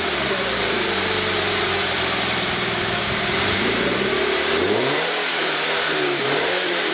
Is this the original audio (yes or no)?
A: no